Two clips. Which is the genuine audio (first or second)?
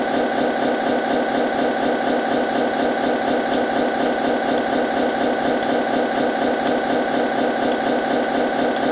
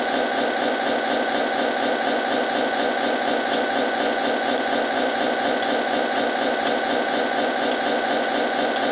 first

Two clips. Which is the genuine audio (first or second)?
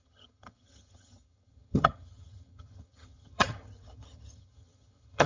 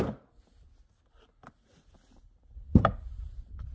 second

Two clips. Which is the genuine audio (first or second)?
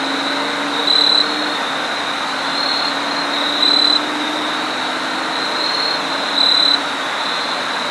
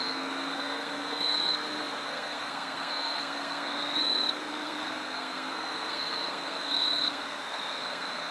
first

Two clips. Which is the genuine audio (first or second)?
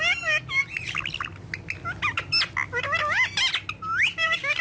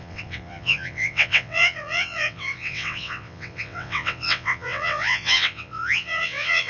first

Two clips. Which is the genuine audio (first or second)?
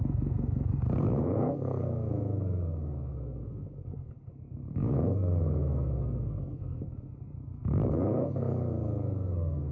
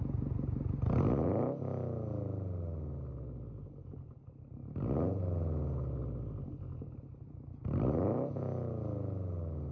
second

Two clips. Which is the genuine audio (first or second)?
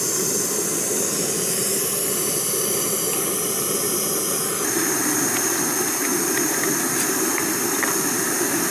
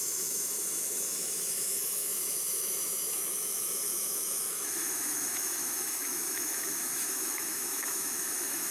first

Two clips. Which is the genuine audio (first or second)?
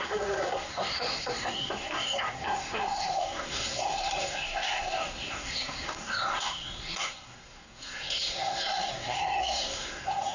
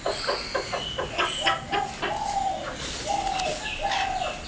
second